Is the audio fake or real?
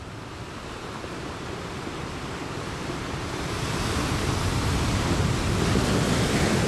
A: real